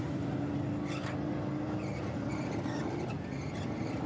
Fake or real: real